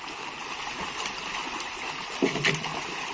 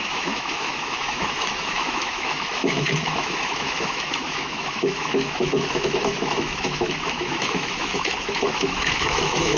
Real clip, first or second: first